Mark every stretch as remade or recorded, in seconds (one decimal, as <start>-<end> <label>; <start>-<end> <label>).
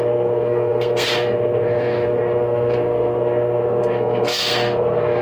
0.0-5.2 remade